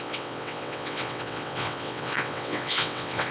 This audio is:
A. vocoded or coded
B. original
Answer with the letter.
A